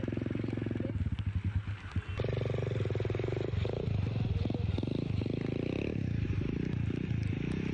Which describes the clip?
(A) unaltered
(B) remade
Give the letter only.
A